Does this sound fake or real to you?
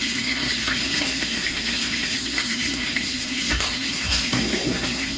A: fake